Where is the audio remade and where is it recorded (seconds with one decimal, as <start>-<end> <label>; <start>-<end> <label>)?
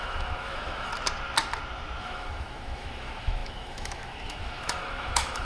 0.0-0.9 remade; 0.9-2.0 recorded; 2.0-5.4 remade